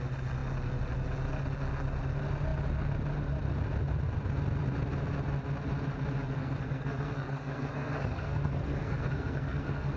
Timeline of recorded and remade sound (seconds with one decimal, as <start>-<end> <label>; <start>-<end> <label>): 0.0-6.4 recorded; 6.4-10.0 remade